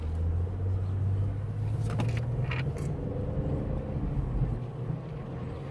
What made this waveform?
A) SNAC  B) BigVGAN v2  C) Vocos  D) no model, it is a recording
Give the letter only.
D